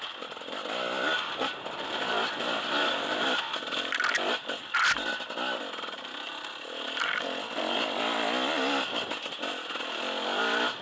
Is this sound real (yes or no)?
yes